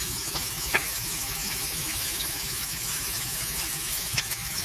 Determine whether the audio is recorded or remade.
remade